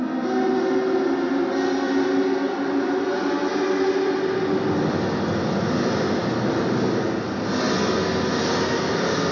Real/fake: real